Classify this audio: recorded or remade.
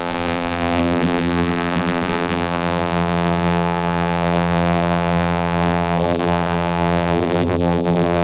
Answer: remade